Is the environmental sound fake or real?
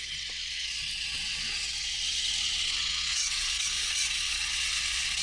fake